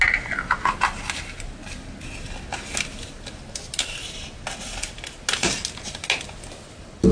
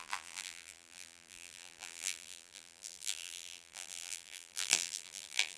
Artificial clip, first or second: second